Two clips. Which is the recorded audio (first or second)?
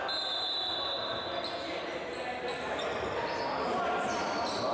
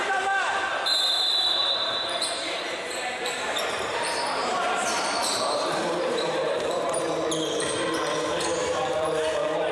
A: first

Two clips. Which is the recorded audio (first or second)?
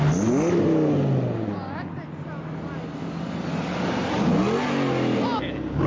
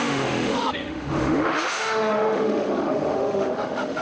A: first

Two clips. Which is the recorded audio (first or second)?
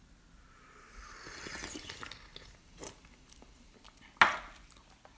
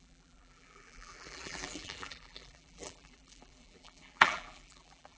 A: first